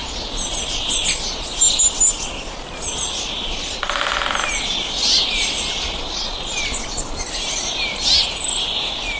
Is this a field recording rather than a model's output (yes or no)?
yes